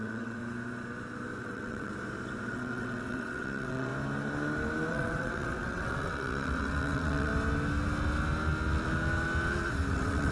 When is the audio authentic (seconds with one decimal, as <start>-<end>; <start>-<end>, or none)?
0.4-1.4; 1.9-2.5; 3.9-4.9; 7.3-9.9